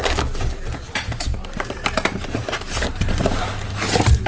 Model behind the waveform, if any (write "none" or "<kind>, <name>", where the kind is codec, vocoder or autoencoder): none